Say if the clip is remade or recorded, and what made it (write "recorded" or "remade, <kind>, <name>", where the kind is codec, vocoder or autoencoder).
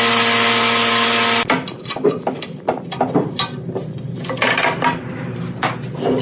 recorded